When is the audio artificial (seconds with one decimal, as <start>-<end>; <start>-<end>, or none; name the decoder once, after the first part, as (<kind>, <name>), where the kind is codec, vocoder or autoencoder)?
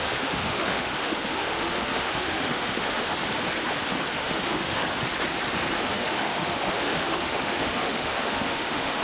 0.0-3.1 (autoencoder, DAC-VAE); 4.1-4.8; 5.8-9.0